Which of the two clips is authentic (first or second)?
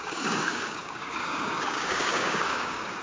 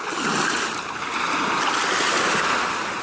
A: second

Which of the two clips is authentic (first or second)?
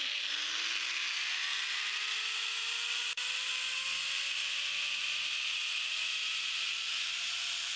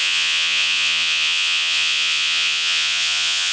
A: first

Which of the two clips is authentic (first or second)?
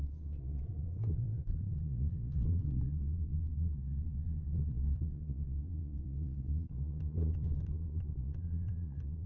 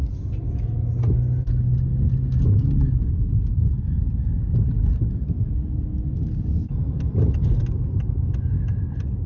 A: second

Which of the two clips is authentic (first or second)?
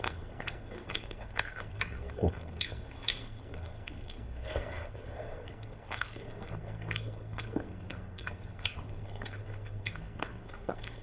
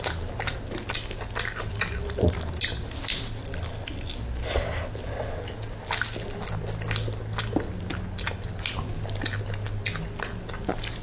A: second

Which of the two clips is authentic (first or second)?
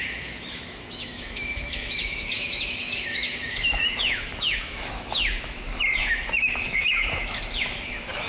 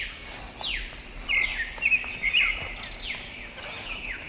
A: second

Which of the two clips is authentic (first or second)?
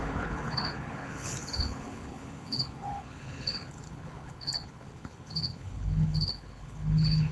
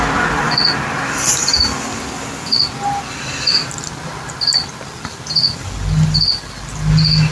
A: second